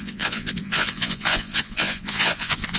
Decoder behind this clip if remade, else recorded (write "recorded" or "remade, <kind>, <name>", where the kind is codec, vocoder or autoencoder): remade, vocoder, Vocos